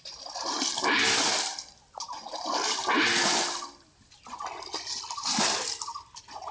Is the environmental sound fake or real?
real